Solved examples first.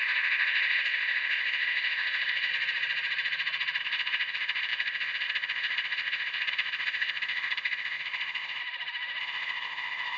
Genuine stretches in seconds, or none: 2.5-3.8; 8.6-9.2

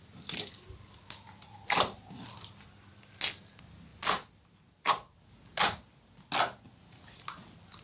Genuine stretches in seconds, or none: 0.0-7.8

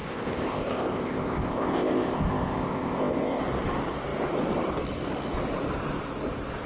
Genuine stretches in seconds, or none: 3.4-6.7

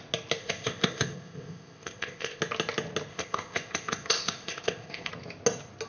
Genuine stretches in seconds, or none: 0.0-0.4; 2.4-3.1; 5.1-5.9

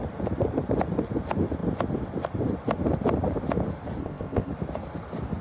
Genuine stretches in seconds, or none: 0.0-4.0; 4.5-5.4

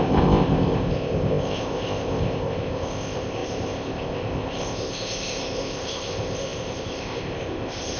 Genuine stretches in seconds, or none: none

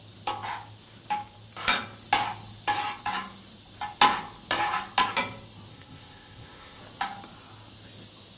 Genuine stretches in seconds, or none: 0.0-5.7; 6.8-8.4